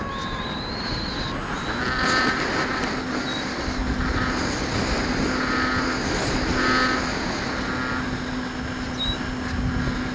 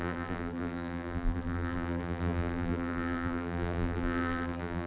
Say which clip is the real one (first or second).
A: first